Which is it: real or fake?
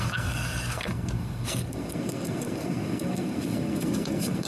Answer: fake